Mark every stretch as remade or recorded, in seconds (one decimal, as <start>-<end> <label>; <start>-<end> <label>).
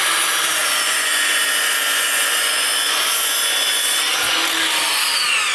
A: 0.0-0.6 recorded; 0.6-3.9 remade; 3.9-5.5 recorded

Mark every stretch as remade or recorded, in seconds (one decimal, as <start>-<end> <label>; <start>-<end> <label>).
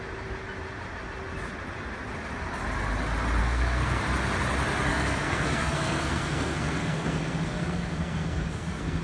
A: 0.0-3.4 recorded; 3.4-4.0 remade; 4.0-4.9 recorded; 4.9-9.0 remade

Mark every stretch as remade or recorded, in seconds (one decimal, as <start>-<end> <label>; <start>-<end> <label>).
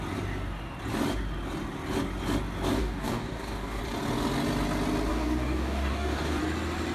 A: 0.0-2.8 recorded; 2.8-3.8 remade; 3.8-5.1 recorded; 5.1-6.4 remade; 6.4-6.9 recorded